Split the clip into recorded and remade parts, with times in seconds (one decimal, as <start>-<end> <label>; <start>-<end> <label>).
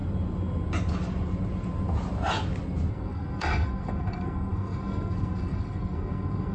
0.0-2.9 recorded; 2.9-6.5 remade